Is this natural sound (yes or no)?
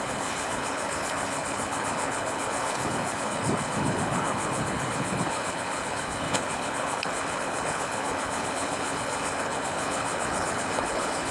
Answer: no